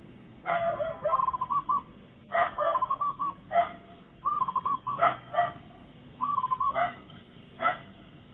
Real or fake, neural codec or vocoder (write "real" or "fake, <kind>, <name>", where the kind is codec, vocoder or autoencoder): fake, codec, SNAC